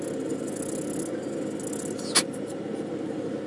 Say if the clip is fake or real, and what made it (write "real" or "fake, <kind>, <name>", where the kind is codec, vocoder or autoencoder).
real